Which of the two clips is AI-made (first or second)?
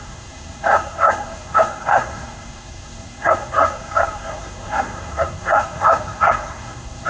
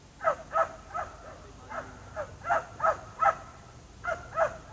first